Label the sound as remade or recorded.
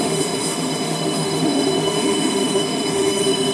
remade